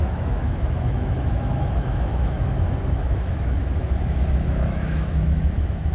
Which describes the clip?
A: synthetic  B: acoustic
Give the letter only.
A